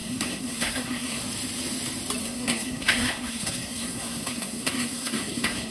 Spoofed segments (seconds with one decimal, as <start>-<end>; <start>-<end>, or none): 0.0-1.2; 2.2-5.7

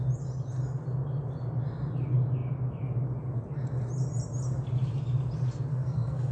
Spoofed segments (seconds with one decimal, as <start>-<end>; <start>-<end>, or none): 5.7-6.3

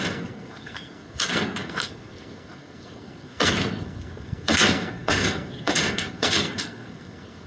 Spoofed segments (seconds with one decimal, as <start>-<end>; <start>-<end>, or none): 0.0-7.5

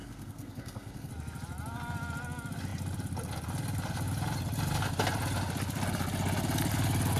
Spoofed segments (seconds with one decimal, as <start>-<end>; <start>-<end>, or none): 0.0-1.1

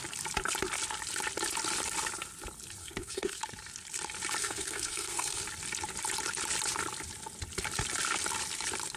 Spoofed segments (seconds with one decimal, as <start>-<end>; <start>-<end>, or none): 2.8-3.4; 4.4-5.4

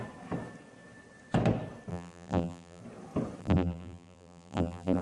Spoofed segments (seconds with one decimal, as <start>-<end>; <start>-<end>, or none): 1.9-2.8; 3.4-5.0